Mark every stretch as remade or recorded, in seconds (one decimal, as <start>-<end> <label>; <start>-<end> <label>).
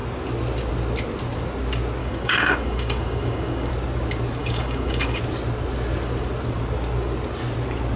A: 0.0-2.0 recorded; 2.0-3.7 remade; 3.7-4.4 recorded; 4.4-5.2 remade; 5.2-8.0 recorded